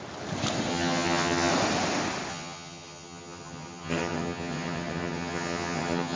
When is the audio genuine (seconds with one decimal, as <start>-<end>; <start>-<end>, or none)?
0.0-0.7; 1.5-2.3